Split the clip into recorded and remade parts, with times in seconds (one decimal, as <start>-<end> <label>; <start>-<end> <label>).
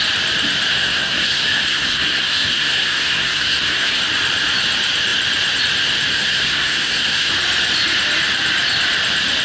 0.0-0.7 recorded; 0.7-4.0 remade; 4.0-6.1 recorded; 6.1-7.3 remade; 7.3-9.4 recorded